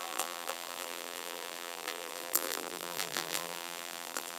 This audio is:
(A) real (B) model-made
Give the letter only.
B